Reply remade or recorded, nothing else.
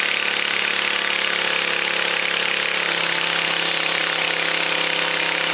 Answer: recorded